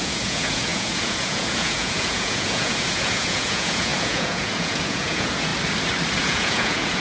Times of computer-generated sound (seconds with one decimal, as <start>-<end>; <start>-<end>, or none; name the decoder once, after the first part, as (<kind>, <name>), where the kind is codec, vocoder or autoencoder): 0.0-5.5 (vocoder, Vocos); 6.2-7.0